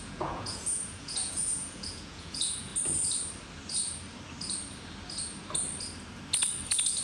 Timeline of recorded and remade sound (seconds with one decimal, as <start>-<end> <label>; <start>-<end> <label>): 0.0-2.7 remade; 2.7-7.0 recorded